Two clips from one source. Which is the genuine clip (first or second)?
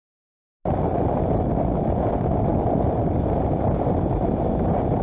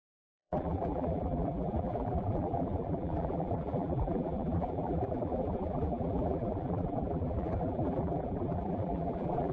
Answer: first